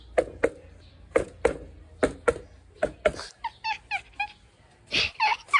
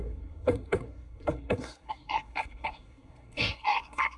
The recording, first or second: first